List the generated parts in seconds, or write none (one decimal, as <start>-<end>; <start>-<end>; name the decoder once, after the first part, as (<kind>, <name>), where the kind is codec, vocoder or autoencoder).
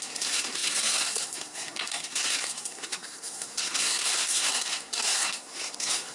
0.0-6.1 (codec, SNAC)